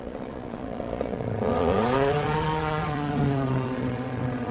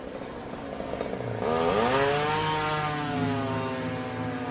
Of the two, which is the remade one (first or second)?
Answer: first